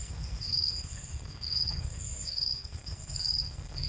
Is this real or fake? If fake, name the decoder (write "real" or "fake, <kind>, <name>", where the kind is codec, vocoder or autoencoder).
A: fake, codec, SNAC